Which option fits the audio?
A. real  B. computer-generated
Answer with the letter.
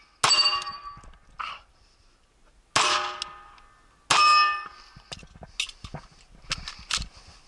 A